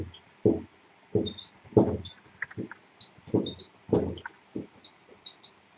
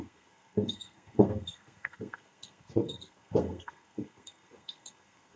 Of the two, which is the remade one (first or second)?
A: second